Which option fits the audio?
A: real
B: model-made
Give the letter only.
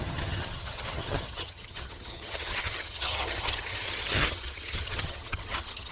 B